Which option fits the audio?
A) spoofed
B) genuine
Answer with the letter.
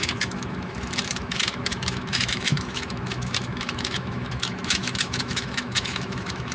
A